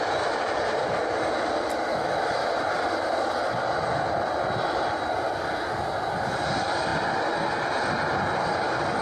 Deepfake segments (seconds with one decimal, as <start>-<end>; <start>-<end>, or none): 1.9-2.5